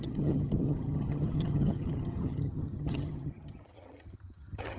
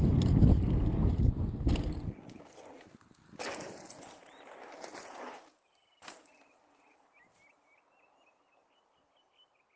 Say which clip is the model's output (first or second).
first